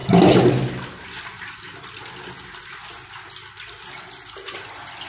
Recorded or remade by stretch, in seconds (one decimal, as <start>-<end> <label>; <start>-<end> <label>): 0.0-5.1 recorded